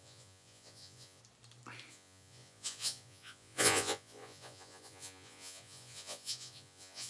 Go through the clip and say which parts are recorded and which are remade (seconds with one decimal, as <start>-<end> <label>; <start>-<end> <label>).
0.0-1.2 remade; 1.2-1.9 recorded; 1.9-7.1 remade